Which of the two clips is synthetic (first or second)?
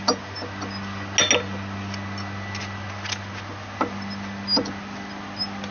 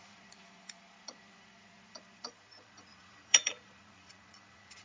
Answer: second